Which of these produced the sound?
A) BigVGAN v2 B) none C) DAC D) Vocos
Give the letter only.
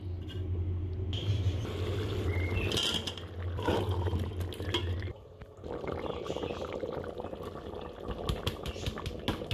B